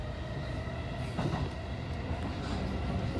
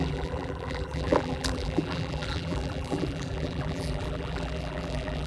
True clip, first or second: first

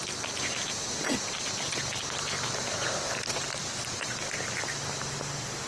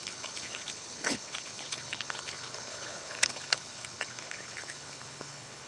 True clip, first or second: first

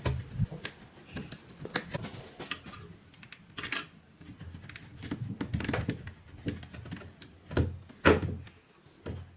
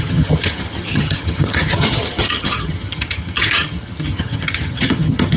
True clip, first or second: first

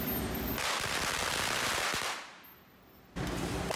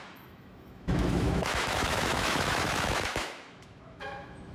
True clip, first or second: first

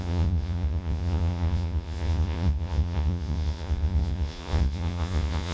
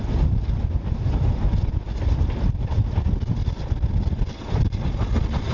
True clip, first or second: second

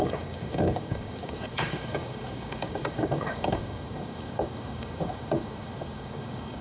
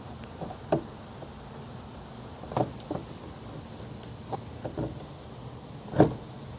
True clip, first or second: second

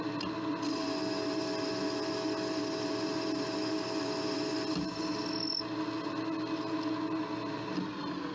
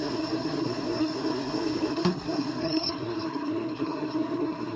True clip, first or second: first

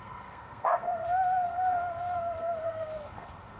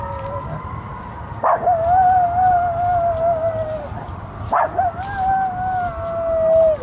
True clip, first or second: second